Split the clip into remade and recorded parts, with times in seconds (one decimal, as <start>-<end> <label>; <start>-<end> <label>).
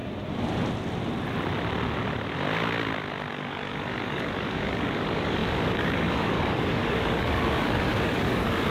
0.0-3.3 recorded; 3.3-8.7 remade